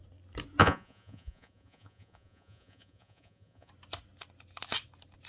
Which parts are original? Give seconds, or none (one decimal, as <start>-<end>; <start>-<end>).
0.0-0.6; 3.7-5.3